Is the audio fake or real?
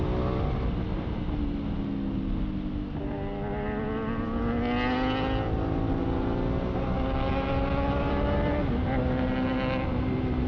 real